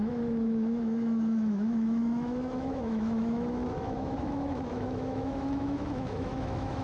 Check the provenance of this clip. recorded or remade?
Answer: remade